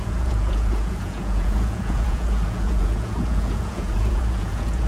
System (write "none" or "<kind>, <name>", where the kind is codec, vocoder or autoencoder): vocoder, Vocos